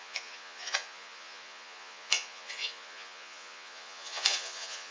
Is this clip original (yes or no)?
no